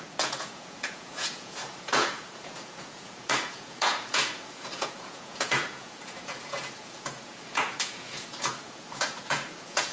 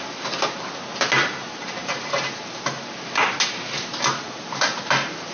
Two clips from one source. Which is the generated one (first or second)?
first